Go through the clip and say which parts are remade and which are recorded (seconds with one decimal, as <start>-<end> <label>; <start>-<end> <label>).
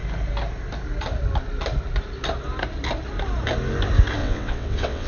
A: 0.0-4.2 recorded; 4.2-5.1 remade